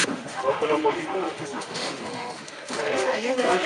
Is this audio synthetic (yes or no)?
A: yes